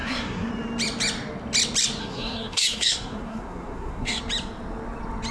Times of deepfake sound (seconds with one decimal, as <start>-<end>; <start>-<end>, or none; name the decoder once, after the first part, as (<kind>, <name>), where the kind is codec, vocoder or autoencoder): 0.0-0.5 (codec, SNAC); 2.0-4.2